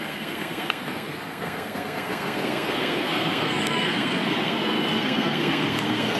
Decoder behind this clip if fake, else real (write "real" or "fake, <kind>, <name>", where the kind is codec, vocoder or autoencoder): fake, codec, SNAC